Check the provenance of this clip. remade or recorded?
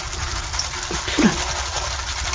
recorded